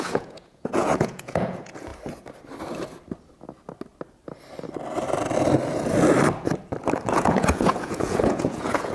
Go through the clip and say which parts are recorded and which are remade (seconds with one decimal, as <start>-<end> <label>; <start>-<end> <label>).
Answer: 0.0-1.9 remade; 1.9-7.1 recorded; 7.1-8.9 remade